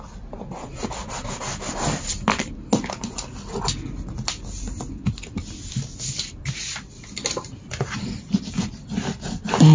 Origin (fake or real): real